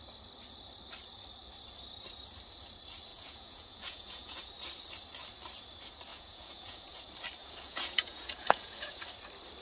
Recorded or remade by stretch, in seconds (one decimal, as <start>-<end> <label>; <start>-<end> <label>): 0.0-3.1 recorded; 3.1-4.5 remade; 4.5-6.1 recorded; 6.1-7.0 remade; 7.0-7.4 recorded; 7.4-9.0 remade; 9.0-9.6 recorded

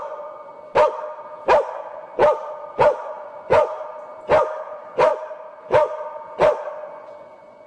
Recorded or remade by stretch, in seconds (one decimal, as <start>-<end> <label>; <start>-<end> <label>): 0.0-0.5 remade; 0.5-1.6 recorded; 1.6-2.2 remade; 2.2-2.7 recorded; 2.7-3.7 remade; 3.7-4.6 recorded; 4.6-5.1 remade; 5.1-5.6 recorded; 5.6-7.7 remade

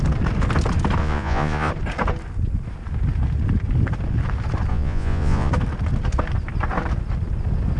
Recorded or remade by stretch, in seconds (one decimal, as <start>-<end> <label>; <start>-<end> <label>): 0.0-1.0 recorded; 1.0-1.7 remade; 1.7-4.7 recorded; 4.7-5.5 remade; 5.5-7.8 recorded